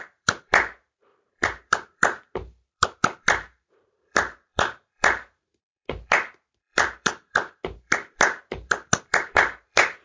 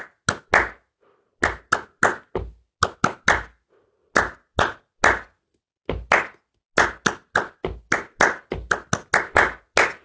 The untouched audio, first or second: second